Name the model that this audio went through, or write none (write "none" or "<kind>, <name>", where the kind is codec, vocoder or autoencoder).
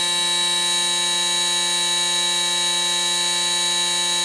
none